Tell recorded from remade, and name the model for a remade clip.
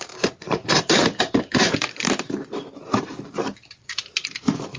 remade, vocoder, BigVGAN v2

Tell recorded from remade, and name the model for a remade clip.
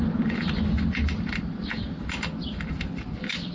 recorded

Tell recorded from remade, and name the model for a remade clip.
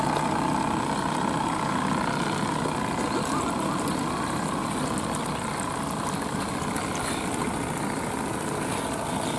recorded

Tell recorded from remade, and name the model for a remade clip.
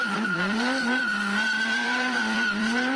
remade, vocoder, BigVGAN v2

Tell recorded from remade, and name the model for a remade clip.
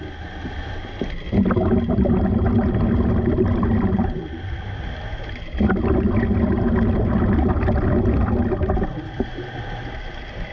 recorded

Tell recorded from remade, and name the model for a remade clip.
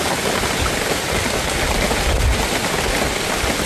recorded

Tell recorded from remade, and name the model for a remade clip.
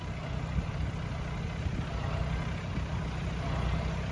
recorded